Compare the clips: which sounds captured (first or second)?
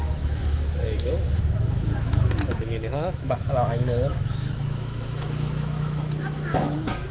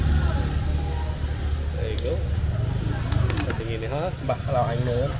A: second